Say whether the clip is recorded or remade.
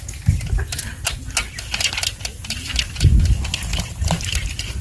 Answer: recorded